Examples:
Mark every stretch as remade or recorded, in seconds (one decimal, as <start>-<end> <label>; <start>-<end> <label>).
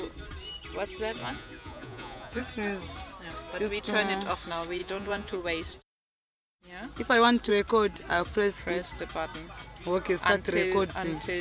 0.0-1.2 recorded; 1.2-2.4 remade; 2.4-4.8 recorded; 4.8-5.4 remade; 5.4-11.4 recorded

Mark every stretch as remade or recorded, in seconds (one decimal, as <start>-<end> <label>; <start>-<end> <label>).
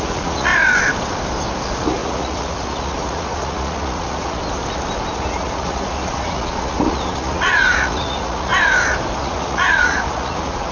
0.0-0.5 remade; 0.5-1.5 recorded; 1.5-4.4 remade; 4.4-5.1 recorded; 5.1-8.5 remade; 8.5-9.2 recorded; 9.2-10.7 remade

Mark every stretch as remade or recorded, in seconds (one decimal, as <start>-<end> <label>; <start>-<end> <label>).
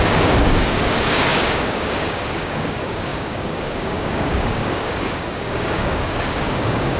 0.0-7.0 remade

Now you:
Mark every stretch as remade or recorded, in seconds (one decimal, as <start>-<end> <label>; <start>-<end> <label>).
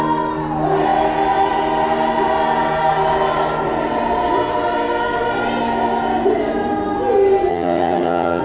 0.0-7.5 recorded; 7.5-8.4 remade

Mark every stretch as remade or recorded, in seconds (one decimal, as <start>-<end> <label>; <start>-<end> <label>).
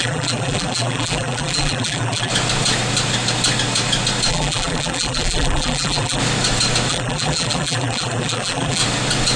0.0-2.3 remade; 2.3-4.3 recorded; 4.3-6.2 remade; 6.2-6.9 recorded; 6.9-8.8 remade; 8.8-9.4 recorded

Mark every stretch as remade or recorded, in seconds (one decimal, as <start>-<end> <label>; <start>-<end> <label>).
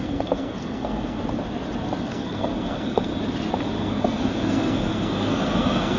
0.0-1.2 remade; 1.2-2.0 recorded; 2.0-3.1 remade; 3.1-3.8 recorded; 3.8-6.0 remade